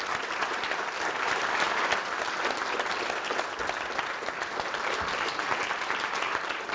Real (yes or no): yes